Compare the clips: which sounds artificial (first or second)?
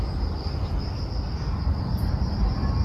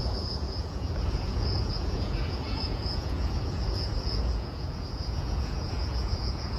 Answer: second